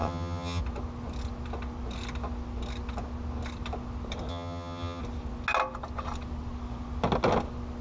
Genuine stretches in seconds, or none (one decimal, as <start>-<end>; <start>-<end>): 0.6-4.3; 5.0-7.8